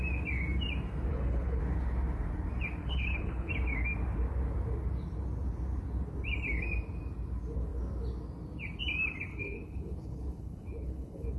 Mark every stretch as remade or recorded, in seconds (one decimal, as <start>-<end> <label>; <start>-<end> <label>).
0.0-1.1 recorded; 1.1-1.6 remade; 1.6-2.8 recorded; 2.8-3.5 remade; 3.5-9.3 recorded; 9.3-11.4 remade